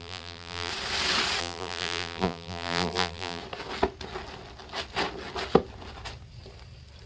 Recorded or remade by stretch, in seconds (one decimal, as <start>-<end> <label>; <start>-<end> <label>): 0.0-0.7 remade; 0.7-1.4 recorded; 1.4-3.4 remade; 3.4-7.1 recorded